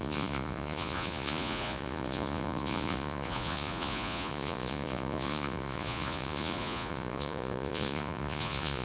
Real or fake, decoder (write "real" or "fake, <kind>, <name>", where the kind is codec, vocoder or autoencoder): fake, vocoder, Vocos